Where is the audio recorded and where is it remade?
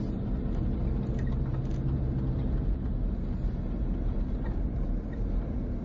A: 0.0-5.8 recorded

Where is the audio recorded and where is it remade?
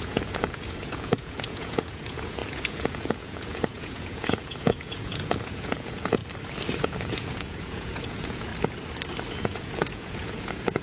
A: 0.0-6.2 remade; 6.2-6.8 recorded; 6.8-8.5 remade; 8.5-9.3 recorded; 9.3-10.8 remade